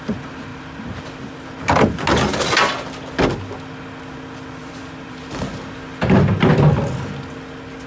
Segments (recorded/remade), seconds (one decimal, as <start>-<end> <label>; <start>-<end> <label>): 0.0-0.5 recorded; 0.5-1.0 remade; 1.0-4.6 recorded; 4.6-5.2 remade; 5.2-7.9 recorded